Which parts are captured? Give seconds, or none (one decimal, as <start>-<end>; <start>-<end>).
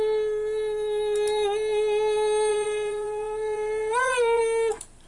0.0-2.5; 4.4-5.1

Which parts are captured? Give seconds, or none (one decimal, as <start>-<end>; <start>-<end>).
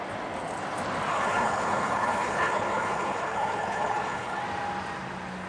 0.0-1.1; 4.4-5.5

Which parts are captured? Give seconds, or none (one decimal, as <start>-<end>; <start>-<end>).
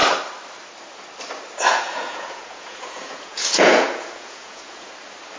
0.0-1.7; 4.9-5.4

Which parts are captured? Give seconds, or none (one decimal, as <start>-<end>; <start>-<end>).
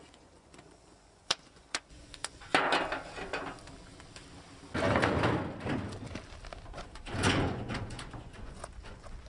2.5-6.7